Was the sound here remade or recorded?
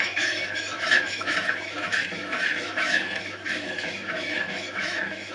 remade